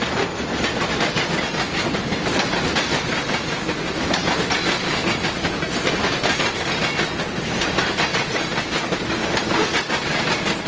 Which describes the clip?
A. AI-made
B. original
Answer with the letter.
B